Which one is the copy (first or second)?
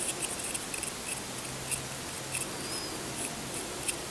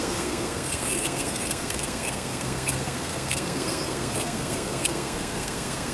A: second